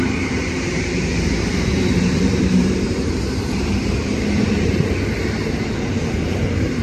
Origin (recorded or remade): remade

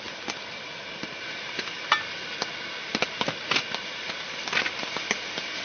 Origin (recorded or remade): recorded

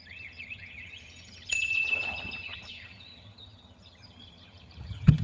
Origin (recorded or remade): remade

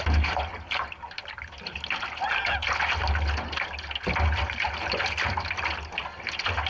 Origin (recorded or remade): recorded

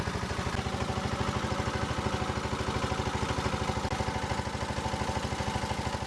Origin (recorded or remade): recorded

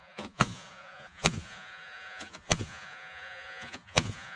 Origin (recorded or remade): remade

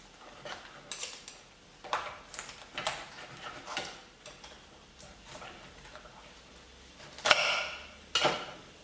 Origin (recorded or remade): recorded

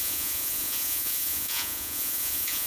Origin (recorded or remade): remade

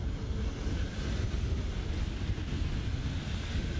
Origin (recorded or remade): recorded